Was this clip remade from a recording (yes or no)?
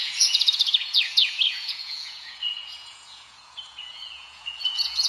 yes